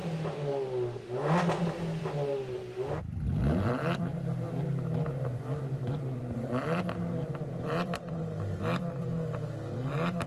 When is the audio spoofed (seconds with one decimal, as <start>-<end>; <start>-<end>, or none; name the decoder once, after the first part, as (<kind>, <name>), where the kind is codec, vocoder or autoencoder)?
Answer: 3.4-4.0 (vocoder, BigVGAN v2); 5.8-8.2